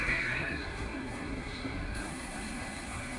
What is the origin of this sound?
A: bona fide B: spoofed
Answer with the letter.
B